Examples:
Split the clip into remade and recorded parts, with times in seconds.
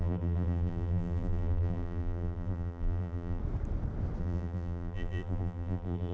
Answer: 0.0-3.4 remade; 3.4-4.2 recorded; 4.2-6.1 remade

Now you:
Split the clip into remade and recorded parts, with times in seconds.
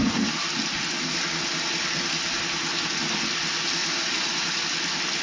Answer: 0.0-3.8 recorded; 3.8-4.6 remade; 4.6-5.2 recorded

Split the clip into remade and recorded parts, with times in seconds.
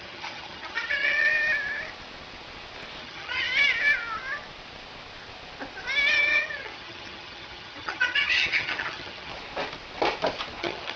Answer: 0.0-1.3 remade; 1.3-3.0 recorded; 3.0-3.5 remade; 3.5-6.1 recorded; 6.1-9.3 remade; 9.3-10.6 recorded; 10.6-11.0 remade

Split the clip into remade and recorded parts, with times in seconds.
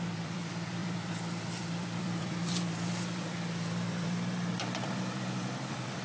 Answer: 0.0-6.0 remade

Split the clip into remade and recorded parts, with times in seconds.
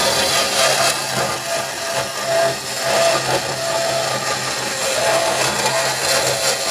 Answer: 0.0-6.7 recorded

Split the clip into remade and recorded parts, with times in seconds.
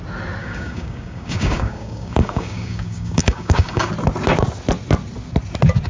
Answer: 0.0-0.4 recorded; 0.4-3.9 remade; 3.9-5.9 recorded